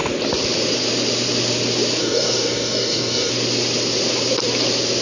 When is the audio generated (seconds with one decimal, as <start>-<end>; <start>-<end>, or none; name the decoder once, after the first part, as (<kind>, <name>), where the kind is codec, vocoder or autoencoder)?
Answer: 2.0-3.3 (codec, DAC)